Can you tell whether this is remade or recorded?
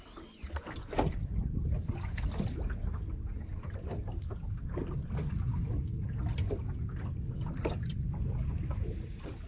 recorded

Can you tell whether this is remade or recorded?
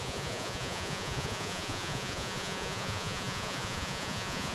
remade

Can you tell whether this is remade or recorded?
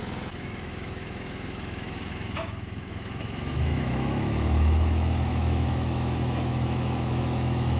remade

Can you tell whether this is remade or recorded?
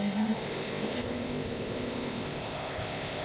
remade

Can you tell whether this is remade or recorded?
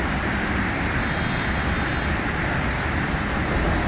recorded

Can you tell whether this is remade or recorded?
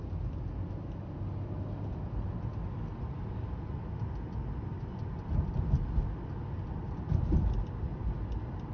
recorded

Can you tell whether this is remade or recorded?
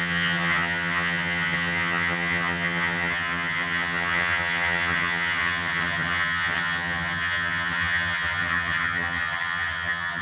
remade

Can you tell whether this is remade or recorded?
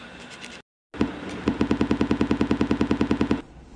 recorded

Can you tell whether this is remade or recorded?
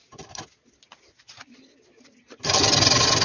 recorded